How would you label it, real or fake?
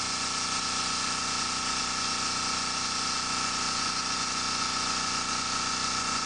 fake